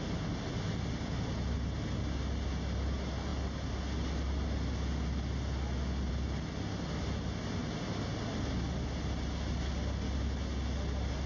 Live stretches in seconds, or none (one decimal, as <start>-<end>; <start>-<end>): 0.0-11.3